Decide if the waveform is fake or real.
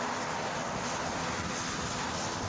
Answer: real